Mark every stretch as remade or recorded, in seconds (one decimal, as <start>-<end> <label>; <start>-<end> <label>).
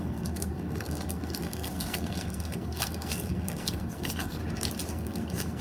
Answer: 0.0-4.4 remade; 4.4-4.9 recorded; 4.9-5.6 remade